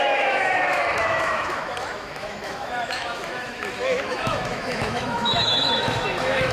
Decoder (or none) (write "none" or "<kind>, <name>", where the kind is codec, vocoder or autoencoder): autoencoder, DAC-VAE